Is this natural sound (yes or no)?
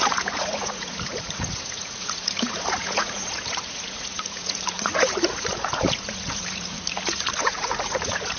no